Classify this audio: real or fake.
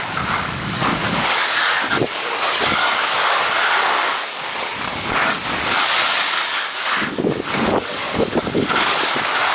fake